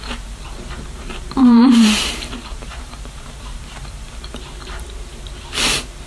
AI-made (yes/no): yes